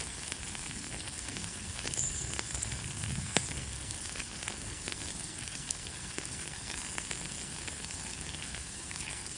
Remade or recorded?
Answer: remade